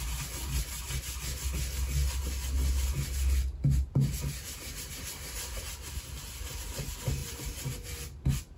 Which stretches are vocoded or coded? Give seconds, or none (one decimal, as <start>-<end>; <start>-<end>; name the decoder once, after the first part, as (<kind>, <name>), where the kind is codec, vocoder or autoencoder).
7.2-8.2 (vocoder, BigVGAN v2)